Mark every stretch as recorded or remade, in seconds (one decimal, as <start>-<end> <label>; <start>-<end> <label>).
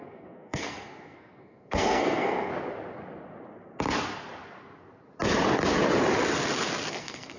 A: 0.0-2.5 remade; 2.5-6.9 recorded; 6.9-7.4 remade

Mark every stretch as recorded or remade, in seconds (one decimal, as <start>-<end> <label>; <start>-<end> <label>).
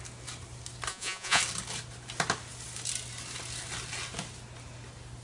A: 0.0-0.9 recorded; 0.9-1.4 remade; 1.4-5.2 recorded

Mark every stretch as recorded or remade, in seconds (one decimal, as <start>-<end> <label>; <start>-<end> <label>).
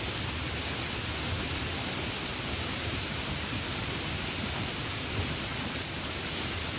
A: 0.0-2.3 recorded; 2.3-5.1 remade; 5.1-6.8 recorded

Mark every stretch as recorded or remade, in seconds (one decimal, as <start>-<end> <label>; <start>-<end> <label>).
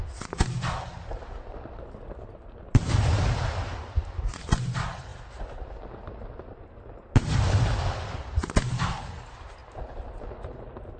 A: 0.0-11.0 recorded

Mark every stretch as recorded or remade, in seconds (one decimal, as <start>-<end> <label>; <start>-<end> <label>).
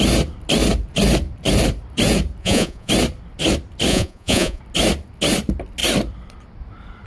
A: 0.0-2.4 recorded; 2.4-2.9 remade; 2.9-3.9 recorded; 3.9-4.6 remade; 4.6-7.1 recorded